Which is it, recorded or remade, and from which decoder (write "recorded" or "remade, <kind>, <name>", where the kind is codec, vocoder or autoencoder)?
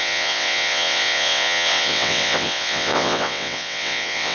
remade, vocoder, WaveNeXt